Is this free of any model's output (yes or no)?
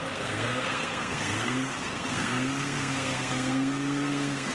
no